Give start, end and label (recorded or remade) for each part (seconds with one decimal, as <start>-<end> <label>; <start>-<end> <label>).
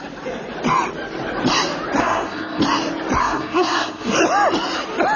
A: 0.0-2.0 recorded; 2.0-2.6 remade; 2.6-3.2 recorded; 3.2-4.2 remade; 4.2-5.2 recorded